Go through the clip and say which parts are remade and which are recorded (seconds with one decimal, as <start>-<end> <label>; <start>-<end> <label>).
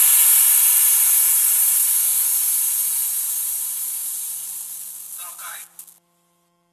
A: 0.0-6.7 recorded